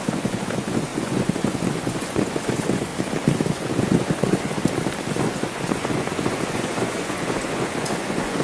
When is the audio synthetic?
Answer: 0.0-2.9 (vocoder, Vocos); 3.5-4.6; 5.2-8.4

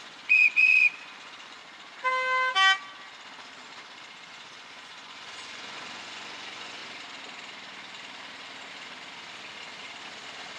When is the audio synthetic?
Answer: 0.0-1.6 (vocoder, Vocos); 4.3-6.8